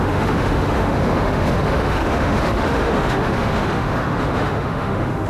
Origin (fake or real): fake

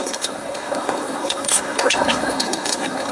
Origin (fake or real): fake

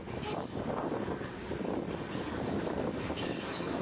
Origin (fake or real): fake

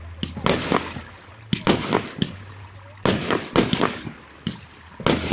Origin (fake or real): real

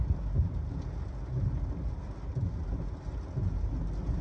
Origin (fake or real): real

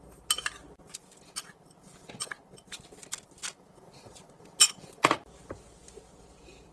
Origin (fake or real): real